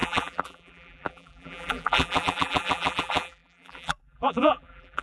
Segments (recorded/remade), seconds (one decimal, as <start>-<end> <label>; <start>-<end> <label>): 0.0-5.0 remade

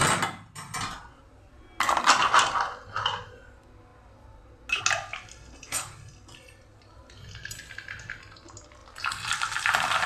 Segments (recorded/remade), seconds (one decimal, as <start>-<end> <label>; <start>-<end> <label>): 0.0-10.1 recorded

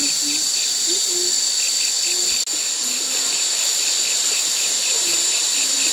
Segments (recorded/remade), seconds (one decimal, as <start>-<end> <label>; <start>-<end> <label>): 0.0-1.0 remade; 1.0-4.2 recorded; 4.2-5.4 remade; 5.4-5.9 recorded

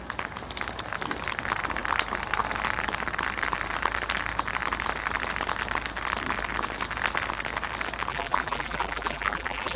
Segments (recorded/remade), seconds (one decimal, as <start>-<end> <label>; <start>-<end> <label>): 0.0-8.1 recorded; 8.1-9.8 remade

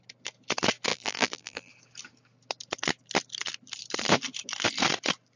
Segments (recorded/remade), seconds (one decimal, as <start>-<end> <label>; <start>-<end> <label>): 0.0-0.9 recorded; 0.9-1.7 remade; 1.7-5.4 recorded